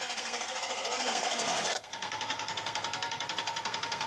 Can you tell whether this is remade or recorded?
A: remade